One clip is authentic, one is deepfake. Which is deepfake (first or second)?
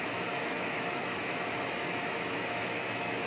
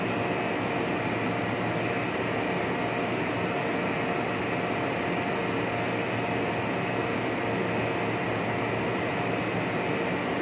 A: first